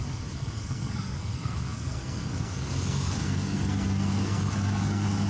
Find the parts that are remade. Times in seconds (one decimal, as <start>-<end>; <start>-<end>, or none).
0.0-5.3